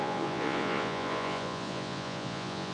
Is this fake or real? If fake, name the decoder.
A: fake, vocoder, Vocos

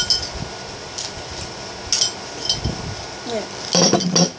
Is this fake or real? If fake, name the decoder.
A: real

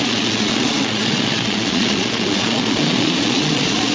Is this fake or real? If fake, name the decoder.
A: fake, vocoder, Vocos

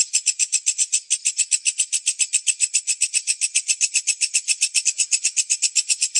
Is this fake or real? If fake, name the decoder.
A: real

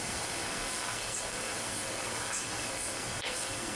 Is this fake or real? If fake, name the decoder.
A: fake, codec, SNAC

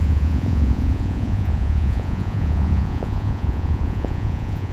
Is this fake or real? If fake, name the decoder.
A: fake, vocoder, Vocos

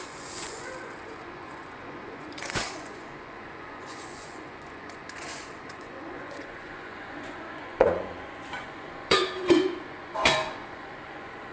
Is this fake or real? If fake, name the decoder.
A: fake, vocoder, Vocos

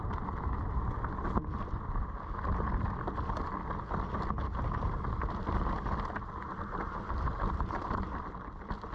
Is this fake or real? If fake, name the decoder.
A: real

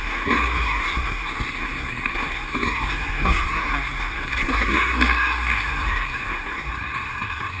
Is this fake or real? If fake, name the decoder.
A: fake, codec, SNAC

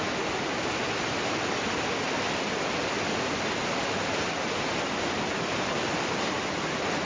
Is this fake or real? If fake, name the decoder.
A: real